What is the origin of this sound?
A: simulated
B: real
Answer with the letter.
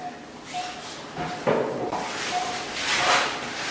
B